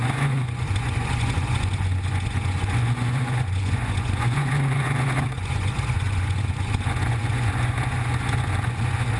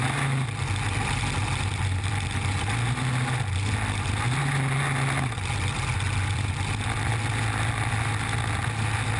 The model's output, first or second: first